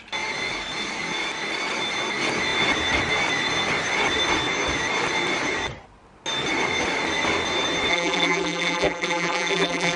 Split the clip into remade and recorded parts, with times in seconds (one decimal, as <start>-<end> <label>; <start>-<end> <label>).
0.0-7.9 recorded; 7.9-10.0 remade